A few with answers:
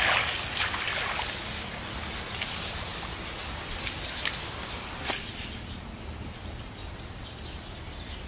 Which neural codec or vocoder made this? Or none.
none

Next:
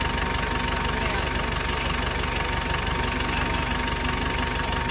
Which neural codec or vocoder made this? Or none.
none